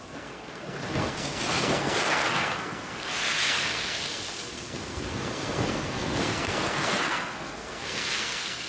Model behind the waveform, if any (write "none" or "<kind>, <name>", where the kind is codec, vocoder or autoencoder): codec, SNAC